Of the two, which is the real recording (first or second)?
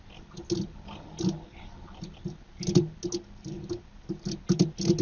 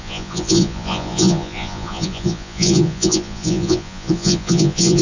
first